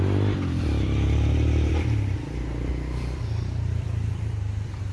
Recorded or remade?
remade